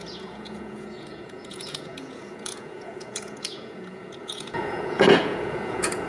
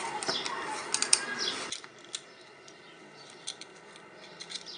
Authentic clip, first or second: second